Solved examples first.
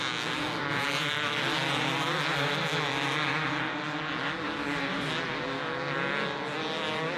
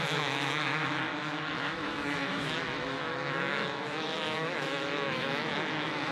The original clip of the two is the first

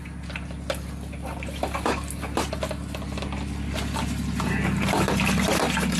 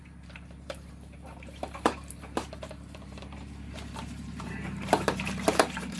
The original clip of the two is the first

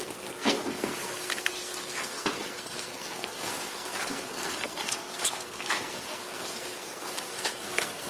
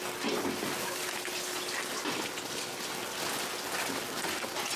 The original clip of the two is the second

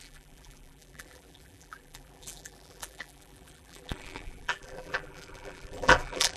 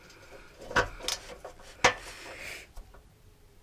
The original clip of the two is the second